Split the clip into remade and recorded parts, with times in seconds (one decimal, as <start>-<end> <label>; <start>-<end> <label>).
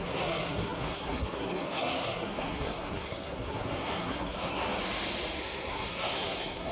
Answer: 0.0-4.7 remade; 4.7-5.4 recorded; 5.4-6.7 remade